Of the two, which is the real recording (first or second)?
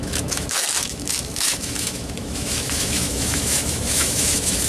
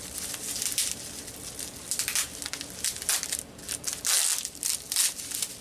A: second